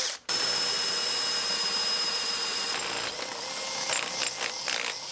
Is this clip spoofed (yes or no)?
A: no